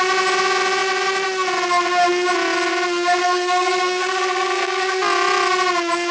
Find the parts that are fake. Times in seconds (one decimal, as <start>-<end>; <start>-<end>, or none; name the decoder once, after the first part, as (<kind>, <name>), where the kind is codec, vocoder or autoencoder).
3.2-5.0 (codec, SNAC)